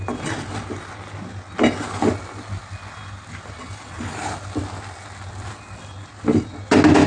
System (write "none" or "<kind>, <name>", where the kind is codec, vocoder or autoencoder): none